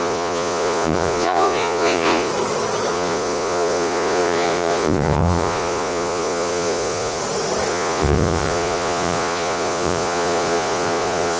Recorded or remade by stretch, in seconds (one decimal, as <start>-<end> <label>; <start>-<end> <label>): 0.0-2.3 remade; 2.3-2.9 recorded; 2.9-7.2 remade; 7.2-7.7 recorded; 7.7-11.4 remade